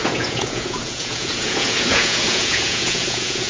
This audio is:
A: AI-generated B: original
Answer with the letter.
A